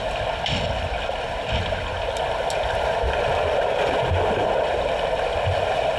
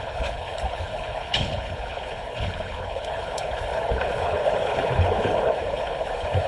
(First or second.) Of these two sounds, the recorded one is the first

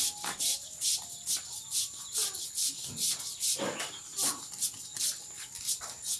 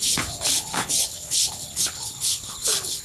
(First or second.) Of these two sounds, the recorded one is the first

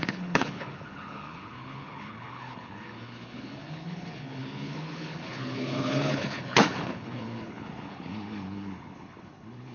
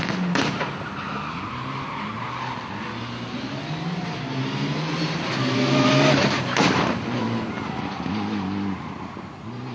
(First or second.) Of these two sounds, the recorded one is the second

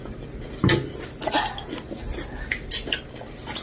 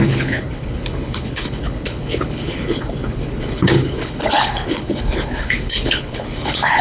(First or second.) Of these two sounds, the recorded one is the first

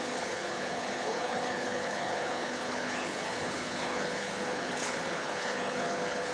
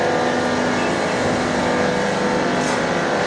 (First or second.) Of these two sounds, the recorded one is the second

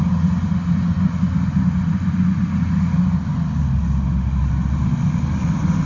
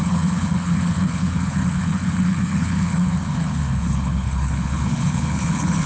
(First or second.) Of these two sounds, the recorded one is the first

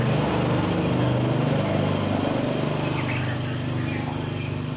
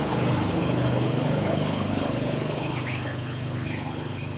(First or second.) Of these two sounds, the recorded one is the first